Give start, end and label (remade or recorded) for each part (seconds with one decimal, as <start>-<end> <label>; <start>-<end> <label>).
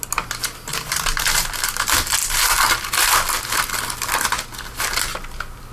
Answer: 0.0-0.7 recorded; 0.7-1.6 remade; 1.6-5.7 recorded